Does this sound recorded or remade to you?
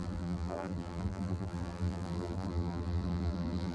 remade